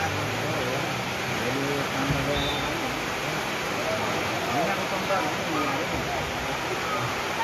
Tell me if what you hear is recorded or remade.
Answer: recorded